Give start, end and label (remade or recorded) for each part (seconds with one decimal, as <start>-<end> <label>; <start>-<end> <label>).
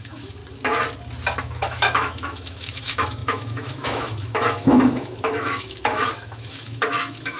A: 0.0-0.4 remade; 0.4-1.4 recorded; 1.4-7.4 remade